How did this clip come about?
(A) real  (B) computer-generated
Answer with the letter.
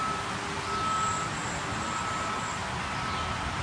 A